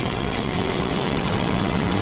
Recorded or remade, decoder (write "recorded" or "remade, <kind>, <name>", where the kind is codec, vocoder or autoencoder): remade, vocoder, WaveNeXt